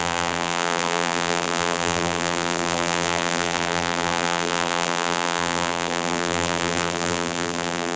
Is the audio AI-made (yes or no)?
yes